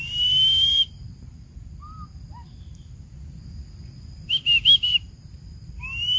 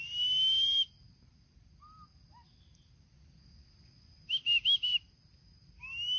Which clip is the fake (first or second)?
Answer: first